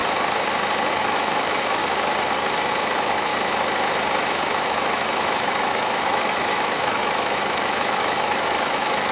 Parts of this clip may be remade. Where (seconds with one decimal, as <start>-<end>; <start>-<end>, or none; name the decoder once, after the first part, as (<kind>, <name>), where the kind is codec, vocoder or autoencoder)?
0.9-1.8 (autoencoder, DAC-VAE); 2.7-3.3; 4.3-9.1